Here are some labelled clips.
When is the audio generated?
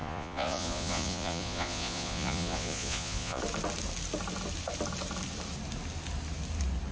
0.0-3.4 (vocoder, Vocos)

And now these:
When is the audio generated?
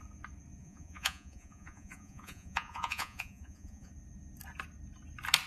0.6-3.9 (vocoder, Vocos)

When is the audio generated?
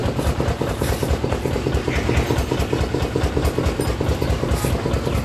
none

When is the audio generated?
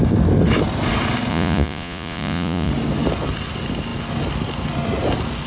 1.3-2.7 (vocoder, Vocos)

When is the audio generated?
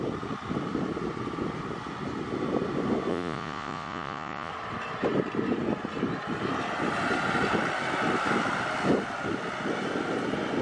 3.1-4.5 (vocoder, Vocos)